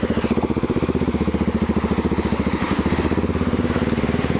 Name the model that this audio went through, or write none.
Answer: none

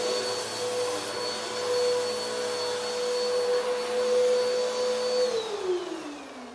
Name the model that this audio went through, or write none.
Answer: none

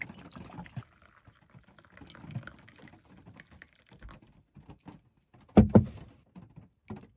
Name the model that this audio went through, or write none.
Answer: none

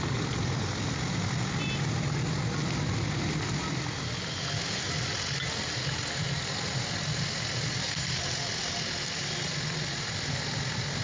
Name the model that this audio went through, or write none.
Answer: none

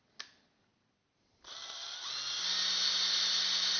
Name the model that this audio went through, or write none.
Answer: none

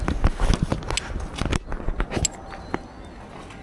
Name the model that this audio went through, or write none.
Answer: none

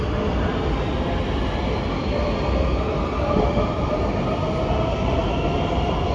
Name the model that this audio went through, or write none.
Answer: none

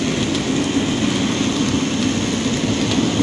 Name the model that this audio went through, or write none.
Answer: none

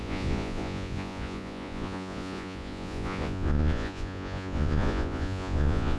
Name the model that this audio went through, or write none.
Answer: vocoder, Vocos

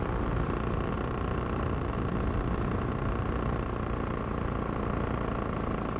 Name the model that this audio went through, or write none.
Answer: none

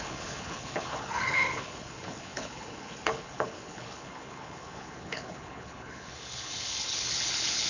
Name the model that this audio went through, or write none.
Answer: codec, HILCodec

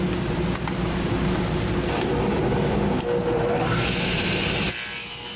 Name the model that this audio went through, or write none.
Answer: none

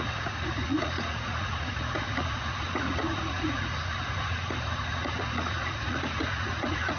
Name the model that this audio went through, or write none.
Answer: vocoder, Vocos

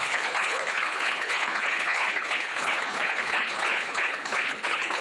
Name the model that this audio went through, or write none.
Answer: codec, HILCodec